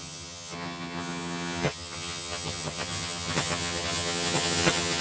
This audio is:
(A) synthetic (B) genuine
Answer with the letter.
A